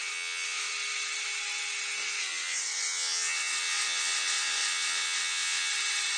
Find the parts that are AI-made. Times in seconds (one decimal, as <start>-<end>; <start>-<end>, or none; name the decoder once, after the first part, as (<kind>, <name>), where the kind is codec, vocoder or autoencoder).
0.0-0.7 (vocoder, WaveNeXt); 2.0-5.7